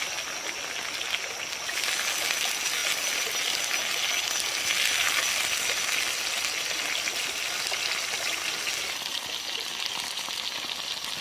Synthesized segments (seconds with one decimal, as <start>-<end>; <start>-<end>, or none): none